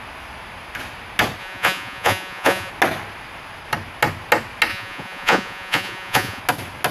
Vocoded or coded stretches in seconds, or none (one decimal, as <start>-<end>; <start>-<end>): 1.4-2.7; 4.7-6.4